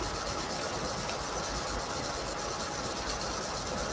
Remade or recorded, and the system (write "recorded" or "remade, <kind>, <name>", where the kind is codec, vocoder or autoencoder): recorded